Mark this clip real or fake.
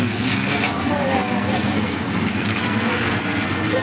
fake